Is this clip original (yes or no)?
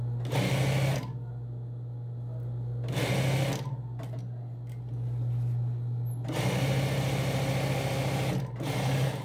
yes